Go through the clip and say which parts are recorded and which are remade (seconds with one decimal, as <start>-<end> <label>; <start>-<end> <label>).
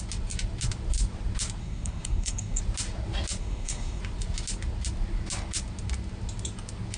0.0-1.6 recorded; 1.6-2.6 remade; 2.6-3.4 recorded; 3.4-4.0 remade; 4.0-7.0 recorded